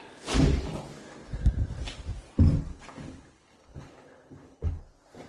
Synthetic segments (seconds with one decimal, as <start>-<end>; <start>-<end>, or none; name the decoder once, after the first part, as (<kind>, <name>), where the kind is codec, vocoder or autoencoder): 2.7-4.8 (codec, HILCodec)